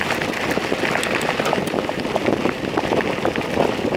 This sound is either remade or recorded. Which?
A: recorded